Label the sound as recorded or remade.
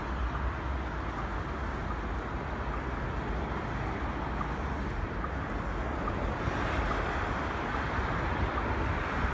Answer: recorded